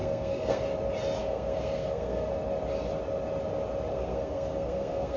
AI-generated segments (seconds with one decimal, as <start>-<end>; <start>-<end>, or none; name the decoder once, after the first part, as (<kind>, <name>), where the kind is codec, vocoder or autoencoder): 0.0-0.6 (codec, SNAC); 1.2-2.3; 3.9-5.2